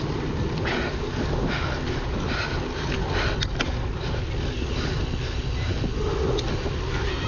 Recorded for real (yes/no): yes